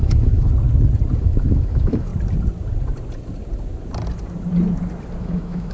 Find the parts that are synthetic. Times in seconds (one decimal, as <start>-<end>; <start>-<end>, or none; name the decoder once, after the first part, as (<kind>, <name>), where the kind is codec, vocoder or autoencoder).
0.0-0.5 (autoencoder, DAC-VAE); 1.2-2.1; 5.2-5.7